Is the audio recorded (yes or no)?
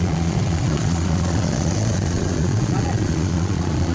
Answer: no